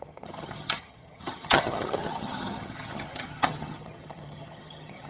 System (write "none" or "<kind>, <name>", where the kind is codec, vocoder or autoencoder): vocoder, HiFi-GAN